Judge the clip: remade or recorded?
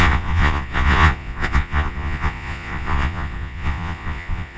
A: remade